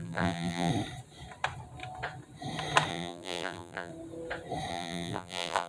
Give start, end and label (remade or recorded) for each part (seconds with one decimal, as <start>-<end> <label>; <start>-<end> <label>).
0.0-0.7 remade; 0.7-2.9 recorded; 2.9-3.9 remade; 3.9-4.7 recorded; 4.7-5.7 remade